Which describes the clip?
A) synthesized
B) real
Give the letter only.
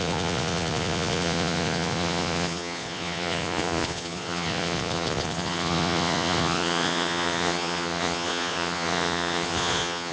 A